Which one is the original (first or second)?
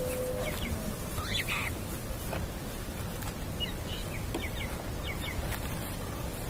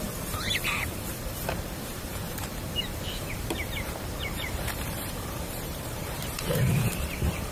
first